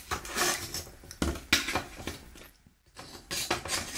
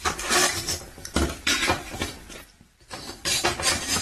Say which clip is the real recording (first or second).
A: first